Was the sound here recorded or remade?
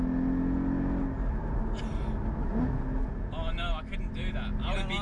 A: recorded